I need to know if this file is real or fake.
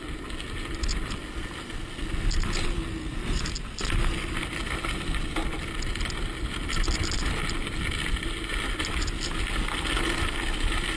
real